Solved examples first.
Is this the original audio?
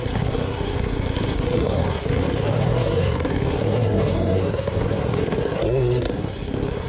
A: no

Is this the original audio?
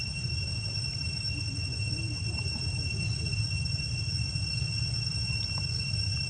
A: yes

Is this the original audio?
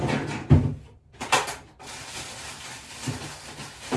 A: yes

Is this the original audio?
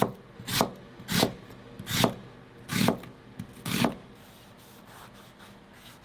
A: yes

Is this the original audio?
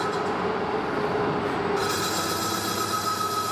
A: yes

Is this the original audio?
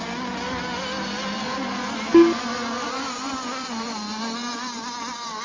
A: yes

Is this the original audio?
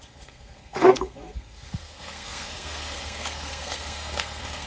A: no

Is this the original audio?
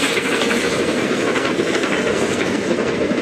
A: no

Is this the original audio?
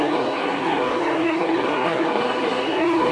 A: no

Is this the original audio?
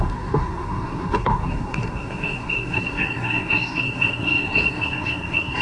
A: no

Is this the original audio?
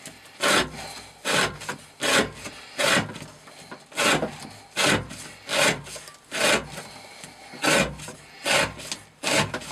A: yes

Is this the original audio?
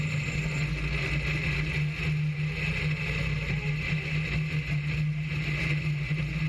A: yes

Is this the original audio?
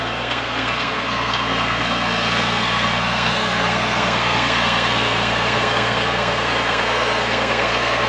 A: no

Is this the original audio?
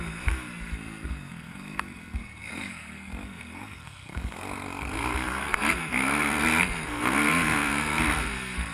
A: no